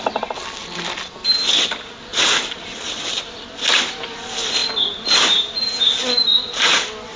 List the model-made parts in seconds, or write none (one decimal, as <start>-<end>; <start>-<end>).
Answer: none